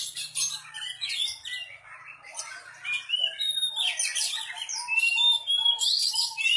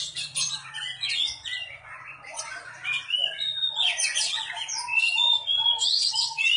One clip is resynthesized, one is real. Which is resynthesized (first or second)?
second